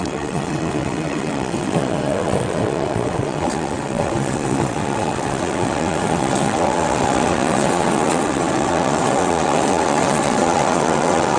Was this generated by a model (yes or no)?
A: yes